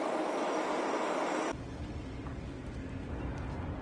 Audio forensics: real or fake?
real